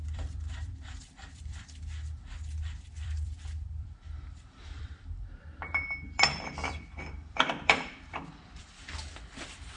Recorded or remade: remade